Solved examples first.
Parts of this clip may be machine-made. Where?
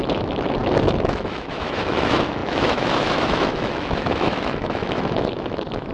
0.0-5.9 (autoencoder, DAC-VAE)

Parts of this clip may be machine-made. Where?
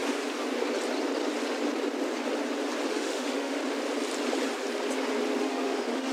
2.9-3.6 (autoencoder, DAC-VAE); 5.4-6.1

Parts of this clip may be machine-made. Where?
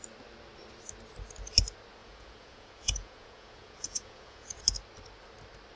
2.0-4.6 (vocoder, Vocos)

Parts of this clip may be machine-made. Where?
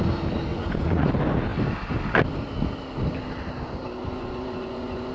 0.5-1.1 (vocoder, Vocos); 4.0-5.1